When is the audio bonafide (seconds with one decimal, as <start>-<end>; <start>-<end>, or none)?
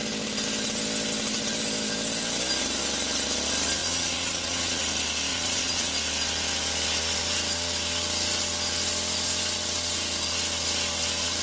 0.0-3.8; 4.8-5.3; 5.9-11.4